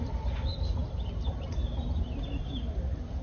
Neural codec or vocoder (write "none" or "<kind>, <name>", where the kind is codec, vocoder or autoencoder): none